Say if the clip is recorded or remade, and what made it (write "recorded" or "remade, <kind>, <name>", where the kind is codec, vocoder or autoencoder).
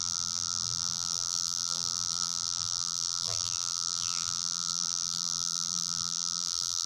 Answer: remade, vocoder, BigVGAN v2